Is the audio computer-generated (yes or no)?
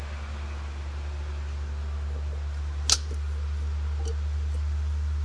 no